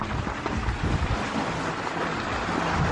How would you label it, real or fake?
real